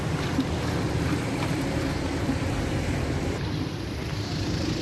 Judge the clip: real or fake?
fake